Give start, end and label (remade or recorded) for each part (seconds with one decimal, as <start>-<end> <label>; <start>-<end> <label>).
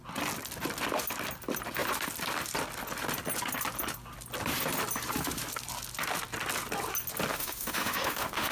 0.0-7.3 recorded; 7.3-8.5 remade